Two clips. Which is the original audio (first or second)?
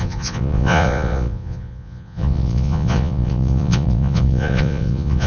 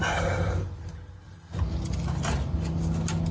second